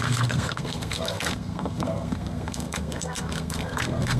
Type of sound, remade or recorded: remade